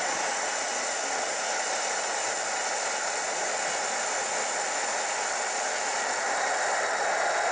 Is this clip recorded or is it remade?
recorded